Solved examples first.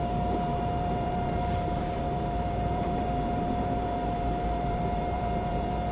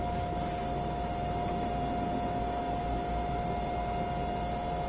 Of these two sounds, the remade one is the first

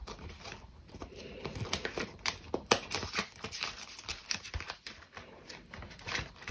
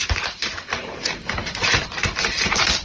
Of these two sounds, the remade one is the first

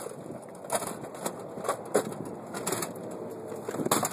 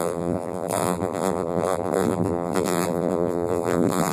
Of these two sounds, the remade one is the second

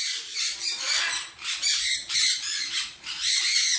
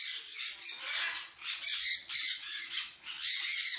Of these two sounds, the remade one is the first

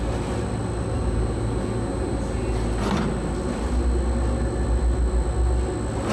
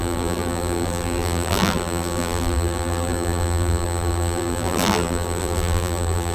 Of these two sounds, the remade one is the second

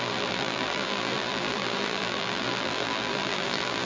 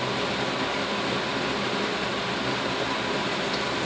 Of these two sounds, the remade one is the first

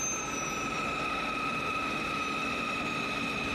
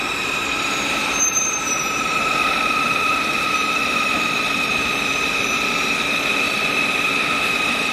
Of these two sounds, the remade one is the second